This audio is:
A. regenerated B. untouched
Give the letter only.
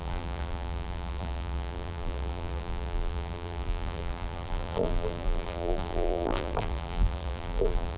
A